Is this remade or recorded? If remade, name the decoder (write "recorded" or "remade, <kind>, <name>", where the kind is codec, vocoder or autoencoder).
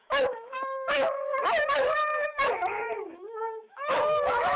remade, autoencoder, DAC-VAE